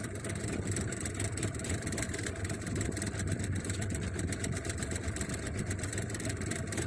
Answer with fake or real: fake